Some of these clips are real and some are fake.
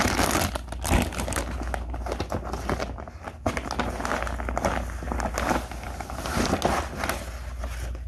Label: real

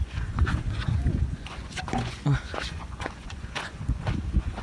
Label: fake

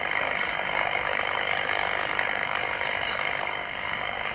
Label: fake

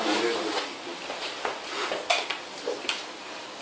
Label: real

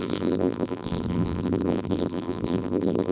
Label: fake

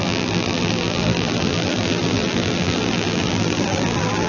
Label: fake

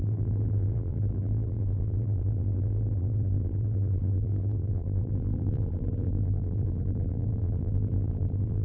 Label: fake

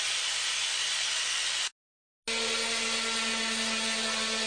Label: real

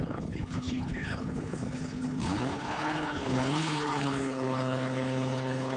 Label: fake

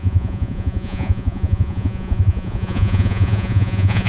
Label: fake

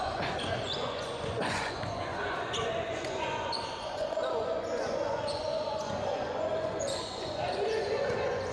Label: fake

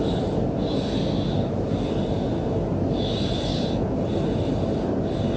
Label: real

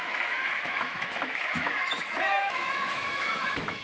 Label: fake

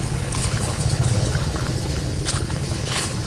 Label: fake